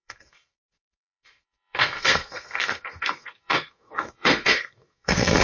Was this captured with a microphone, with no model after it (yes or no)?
no